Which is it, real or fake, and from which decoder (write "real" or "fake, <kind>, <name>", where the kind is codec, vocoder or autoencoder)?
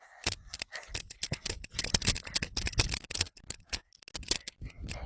real